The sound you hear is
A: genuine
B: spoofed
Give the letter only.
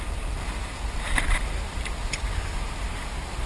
A